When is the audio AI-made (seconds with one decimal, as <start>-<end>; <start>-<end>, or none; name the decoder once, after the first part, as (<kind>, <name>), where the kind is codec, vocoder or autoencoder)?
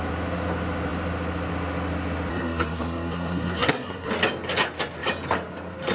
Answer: 2.3-4.1 (codec, SNAC)